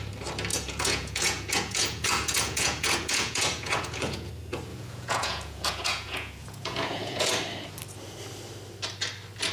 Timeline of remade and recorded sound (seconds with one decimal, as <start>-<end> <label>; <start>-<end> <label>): 0.0-0.5 recorded; 0.5-4.3 remade; 4.3-4.7 recorded; 4.7-7.3 remade; 7.3-9.5 recorded